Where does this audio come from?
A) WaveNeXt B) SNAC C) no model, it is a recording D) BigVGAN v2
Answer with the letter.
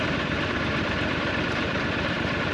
D